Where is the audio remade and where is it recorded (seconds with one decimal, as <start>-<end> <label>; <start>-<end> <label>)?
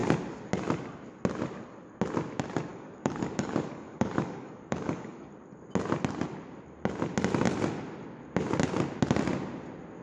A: 0.0-2.7 recorded; 2.7-5.3 remade; 5.3-10.0 recorded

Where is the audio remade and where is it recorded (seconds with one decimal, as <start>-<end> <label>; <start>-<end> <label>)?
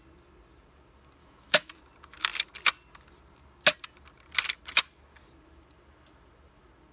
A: 0.0-1.2 recorded; 1.2-1.7 remade; 1.7-6.9 recorded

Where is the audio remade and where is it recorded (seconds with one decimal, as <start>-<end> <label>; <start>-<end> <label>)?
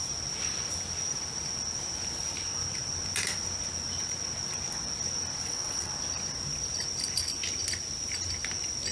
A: 0.0-5.4 recorded; 5.4-5.9 remade; 5.9-8.9 recorded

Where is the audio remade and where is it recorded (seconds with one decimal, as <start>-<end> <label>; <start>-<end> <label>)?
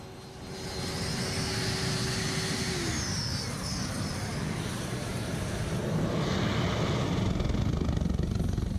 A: 0.0-8.8 recorded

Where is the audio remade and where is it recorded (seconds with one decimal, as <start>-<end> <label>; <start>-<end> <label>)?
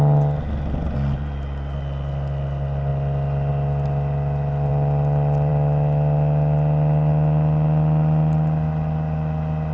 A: 0.0-9.7 recorded